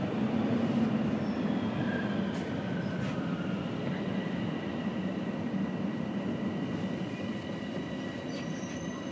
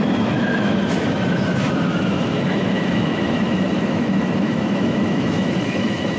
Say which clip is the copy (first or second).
second